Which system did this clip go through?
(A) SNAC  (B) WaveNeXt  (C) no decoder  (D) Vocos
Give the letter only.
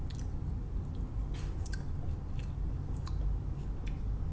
C